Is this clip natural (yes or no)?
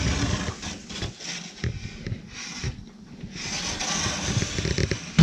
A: yes